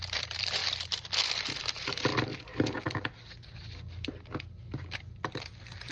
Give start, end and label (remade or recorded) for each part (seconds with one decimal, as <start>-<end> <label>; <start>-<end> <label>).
0.0-0.6 remade; 0.6-1.6 recorded; 1.6-2.3 remade; 2.3-5.3 recorded; 5.3-5.9 remade